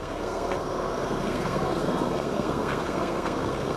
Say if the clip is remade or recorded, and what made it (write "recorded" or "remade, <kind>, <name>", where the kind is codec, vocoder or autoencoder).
remade, codec, SNAC